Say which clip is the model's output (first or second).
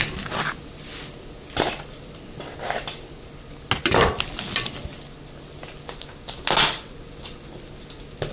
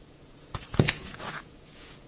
second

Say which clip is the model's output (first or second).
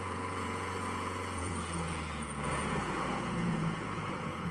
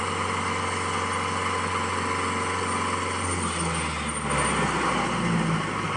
first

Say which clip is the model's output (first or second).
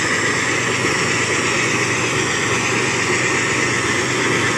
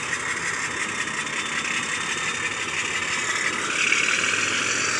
first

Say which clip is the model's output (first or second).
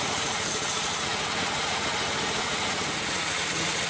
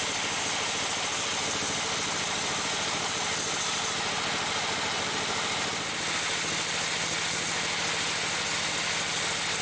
first